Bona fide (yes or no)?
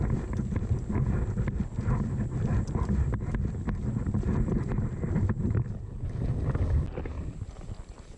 yes